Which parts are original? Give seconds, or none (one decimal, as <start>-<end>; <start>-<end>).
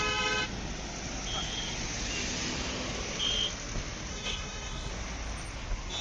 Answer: 0.0-4.1; 4.9-6.0